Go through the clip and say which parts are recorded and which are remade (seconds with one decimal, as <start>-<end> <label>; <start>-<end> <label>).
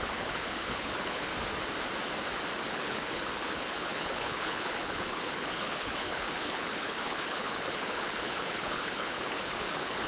0.0-1.3 remade; 1.3-2.7 recorded; 2.7-10.1 remade